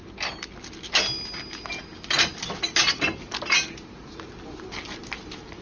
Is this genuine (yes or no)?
yes